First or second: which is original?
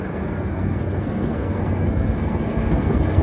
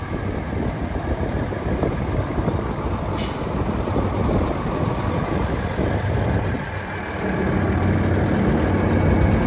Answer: second